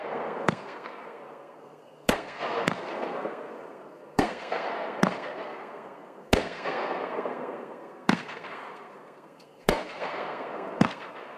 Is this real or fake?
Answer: fake